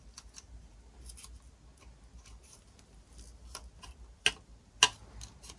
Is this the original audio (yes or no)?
yes